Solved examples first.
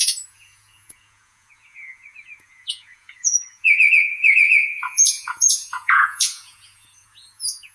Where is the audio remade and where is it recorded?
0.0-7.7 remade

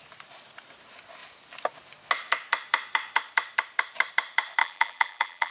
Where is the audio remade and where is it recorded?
0.0-4.6 recorded; 4.6-5.5 remade

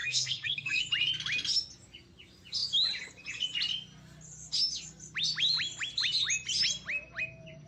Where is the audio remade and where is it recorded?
0.0-0.8 remade; 0.8-7.7 recorded